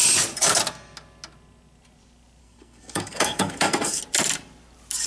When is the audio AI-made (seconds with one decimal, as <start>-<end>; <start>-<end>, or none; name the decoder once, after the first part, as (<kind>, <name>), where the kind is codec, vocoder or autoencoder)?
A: 2.4-4.0 (codec, SNAC)